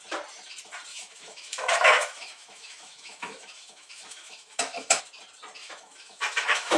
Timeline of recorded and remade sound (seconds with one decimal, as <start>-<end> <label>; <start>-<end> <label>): 0.0-0.9 recorded; 0.9-5.0 remade; 5.0-5.6 recorded; 5.6-6.8 remade